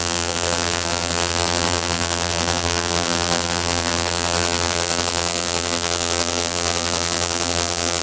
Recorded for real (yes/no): no